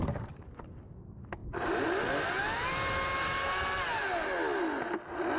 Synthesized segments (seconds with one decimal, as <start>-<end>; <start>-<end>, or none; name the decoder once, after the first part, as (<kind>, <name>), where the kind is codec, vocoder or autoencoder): none